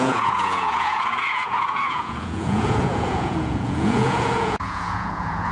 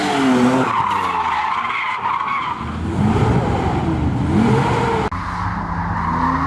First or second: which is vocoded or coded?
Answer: first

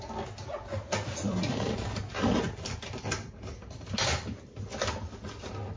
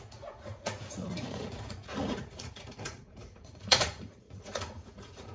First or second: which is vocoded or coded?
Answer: second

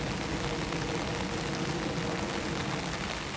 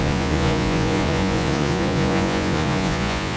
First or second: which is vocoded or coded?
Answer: second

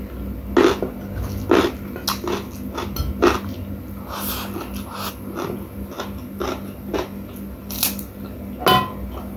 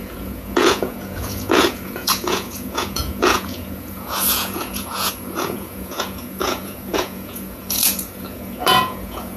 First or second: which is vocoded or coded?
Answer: second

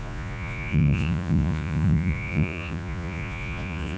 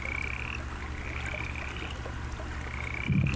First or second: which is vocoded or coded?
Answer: first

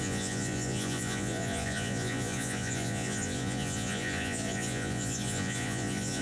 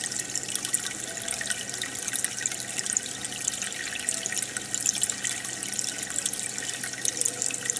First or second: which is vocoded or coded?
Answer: first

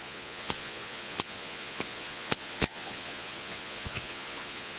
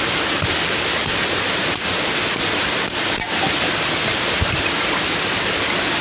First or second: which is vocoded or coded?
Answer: first